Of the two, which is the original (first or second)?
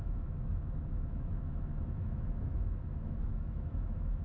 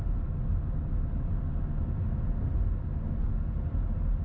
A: second